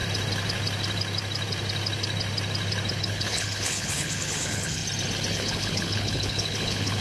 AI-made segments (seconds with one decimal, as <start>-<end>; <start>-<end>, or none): 2.9-4.8; 5.3-7.0